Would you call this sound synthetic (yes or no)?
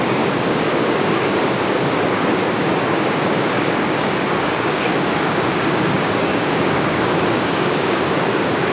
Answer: yes